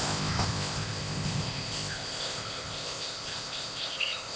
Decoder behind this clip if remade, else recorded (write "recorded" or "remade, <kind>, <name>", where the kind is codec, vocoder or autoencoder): remade, codec, ZipCodec